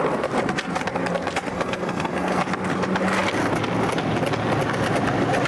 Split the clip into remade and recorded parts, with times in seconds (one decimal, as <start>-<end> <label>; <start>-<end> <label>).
0.0-1.5 recorded; 1.5-2.4 remade; 2.4-5.5 recorded